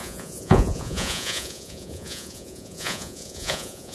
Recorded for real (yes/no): no